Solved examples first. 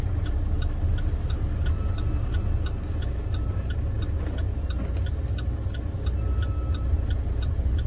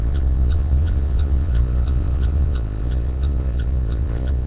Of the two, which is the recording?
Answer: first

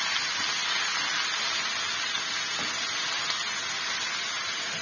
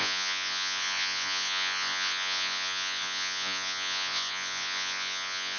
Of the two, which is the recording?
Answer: first